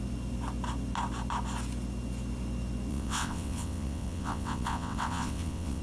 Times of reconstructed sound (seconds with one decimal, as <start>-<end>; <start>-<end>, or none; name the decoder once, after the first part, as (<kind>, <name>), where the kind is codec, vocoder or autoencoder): 2.9-5.8 (vocoder, WaveNeXt)

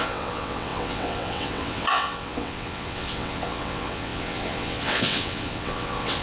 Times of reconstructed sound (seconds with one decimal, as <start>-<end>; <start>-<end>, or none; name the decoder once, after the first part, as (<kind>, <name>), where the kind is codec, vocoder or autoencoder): 0.0-6.2 (vocoder, WaveNeXt)

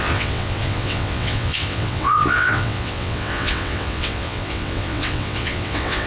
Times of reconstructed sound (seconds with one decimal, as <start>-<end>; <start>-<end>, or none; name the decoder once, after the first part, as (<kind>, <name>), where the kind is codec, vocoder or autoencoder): 0.0-6.1 (vocoder, WaveNeXt)

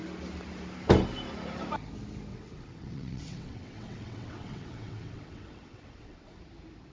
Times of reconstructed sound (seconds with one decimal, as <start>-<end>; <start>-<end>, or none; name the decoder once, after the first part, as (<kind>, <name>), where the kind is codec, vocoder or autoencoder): 2.3-6.4 (vocoder, WaveNeXt)

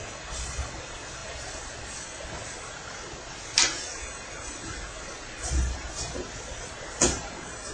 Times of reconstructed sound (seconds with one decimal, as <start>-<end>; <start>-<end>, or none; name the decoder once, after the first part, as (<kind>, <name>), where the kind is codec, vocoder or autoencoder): none